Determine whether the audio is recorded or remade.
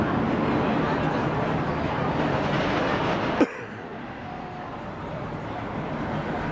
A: recorded